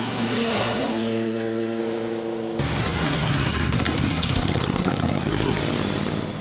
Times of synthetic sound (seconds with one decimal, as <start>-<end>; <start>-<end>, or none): 0.0-1.8; 2.8-5.6